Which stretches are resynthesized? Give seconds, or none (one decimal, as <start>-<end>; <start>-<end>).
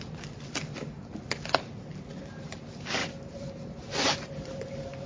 3.0-5.1